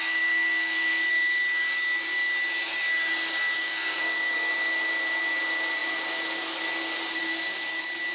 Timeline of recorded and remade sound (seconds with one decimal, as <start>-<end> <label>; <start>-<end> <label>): 0.0-1.1 remade; 1.1-3.6 recorded; 3.6-4.5 remade; 4.5-8.1 recorded